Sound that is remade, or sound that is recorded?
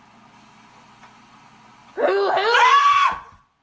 recorded